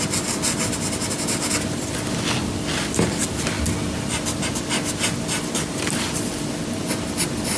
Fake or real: real